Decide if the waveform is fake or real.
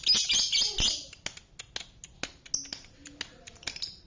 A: real